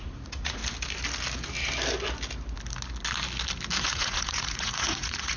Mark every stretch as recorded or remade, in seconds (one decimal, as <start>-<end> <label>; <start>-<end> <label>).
0.0-0.6 remade; 0.6-3.8 recorded; 3.8-5.4 remade